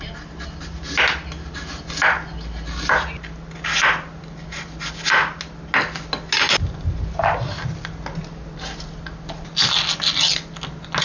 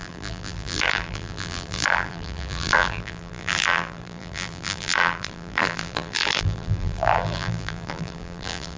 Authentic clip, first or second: first